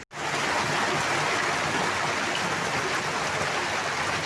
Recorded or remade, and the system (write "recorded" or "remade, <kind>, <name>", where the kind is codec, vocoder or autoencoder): recorded